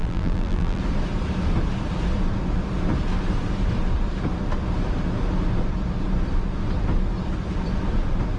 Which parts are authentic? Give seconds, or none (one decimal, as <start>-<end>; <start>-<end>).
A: 0.8-8.4